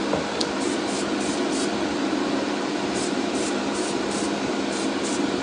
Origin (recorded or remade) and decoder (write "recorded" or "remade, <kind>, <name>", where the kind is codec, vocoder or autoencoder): recorded